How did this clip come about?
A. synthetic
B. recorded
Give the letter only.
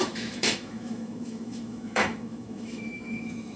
A